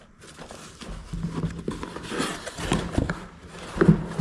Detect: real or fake real